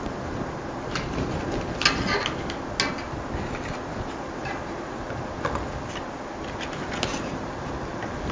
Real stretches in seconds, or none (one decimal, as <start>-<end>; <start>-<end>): 0.0-7.1; 7.7-8.3